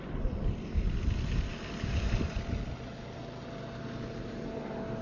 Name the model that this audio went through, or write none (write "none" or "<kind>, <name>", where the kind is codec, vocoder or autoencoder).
none